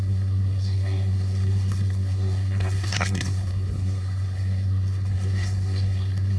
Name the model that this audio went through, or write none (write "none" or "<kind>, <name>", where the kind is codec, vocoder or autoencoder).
codec, SNAC